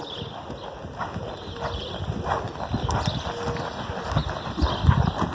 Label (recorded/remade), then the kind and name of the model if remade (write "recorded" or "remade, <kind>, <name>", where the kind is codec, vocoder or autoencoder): recorded